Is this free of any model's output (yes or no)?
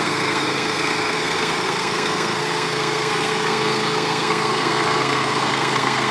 no